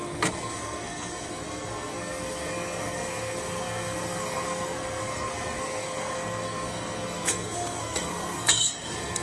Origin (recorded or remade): remade